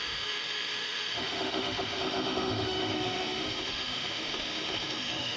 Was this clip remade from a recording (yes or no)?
yes